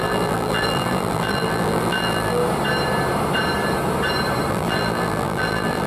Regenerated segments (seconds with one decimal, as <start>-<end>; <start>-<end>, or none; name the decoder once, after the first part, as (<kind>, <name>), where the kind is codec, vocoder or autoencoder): 0.0-2.4 (vocoder, BigVGAN v2); 4.5-5.9